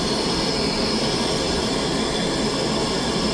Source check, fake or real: real